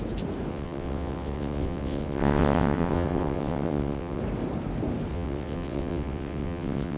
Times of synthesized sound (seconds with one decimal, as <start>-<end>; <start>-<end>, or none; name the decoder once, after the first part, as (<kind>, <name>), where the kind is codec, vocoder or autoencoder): 0.5-4.2 (vocoder, WaveNeXt); 5.1-7.0